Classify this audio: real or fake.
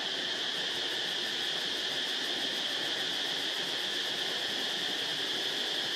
real